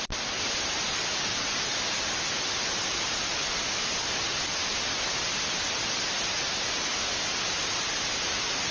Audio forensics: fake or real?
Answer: real